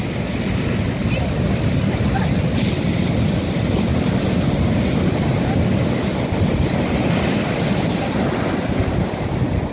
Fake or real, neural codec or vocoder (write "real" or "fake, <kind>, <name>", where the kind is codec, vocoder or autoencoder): real